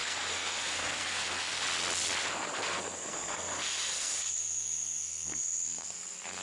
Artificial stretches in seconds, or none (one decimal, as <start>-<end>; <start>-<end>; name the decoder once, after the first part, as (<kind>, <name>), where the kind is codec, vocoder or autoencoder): 0.0-1.6 (codec, SNAC); 2.3-6.4